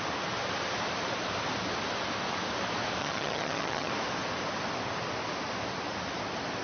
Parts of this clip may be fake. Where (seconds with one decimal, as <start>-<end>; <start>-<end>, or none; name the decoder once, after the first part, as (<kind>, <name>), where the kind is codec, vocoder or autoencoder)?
3.0-3.9 (vocoder, HiFi-GAN)

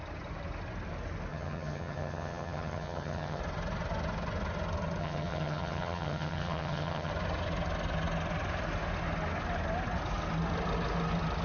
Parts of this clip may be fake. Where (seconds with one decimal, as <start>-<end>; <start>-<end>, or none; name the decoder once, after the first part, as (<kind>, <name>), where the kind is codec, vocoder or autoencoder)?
1.3-3.4 (vocoder, HiFi-GAN); 5.0-7.1

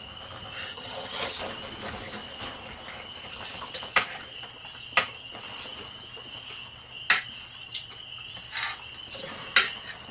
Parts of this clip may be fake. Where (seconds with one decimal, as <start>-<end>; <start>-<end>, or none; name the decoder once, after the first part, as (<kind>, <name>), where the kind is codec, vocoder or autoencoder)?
0.7-1.4 (vocoder, HiFi-GAN)

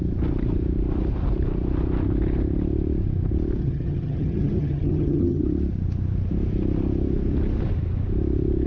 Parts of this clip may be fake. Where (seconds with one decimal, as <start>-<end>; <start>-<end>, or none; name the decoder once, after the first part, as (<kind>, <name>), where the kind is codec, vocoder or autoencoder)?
3.6-5.4 (vocoder, HiFi-GAN)

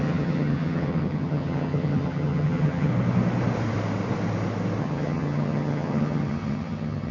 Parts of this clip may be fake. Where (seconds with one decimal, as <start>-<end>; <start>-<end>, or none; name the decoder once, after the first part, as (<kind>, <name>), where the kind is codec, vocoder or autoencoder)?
0.0-2.9 (vocoder, HiFi-GAN); 4.8-7.1